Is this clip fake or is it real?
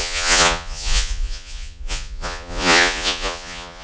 fake